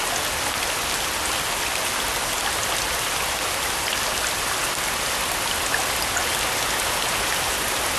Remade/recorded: recorded